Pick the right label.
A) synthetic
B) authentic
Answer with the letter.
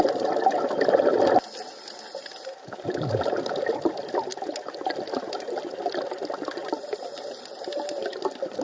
B